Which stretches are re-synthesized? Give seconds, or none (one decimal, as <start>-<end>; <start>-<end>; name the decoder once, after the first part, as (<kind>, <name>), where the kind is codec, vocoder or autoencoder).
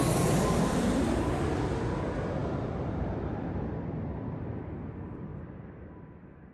2.4-3.7 (vocoder, BigVGAN v2); 5.3-5.9